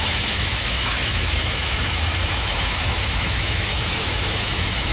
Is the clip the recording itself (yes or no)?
no